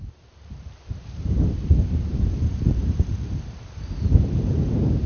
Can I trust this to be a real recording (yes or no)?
no